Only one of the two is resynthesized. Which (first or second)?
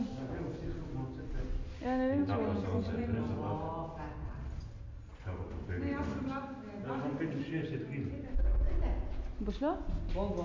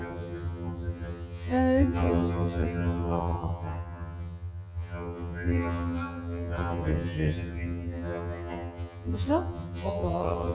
second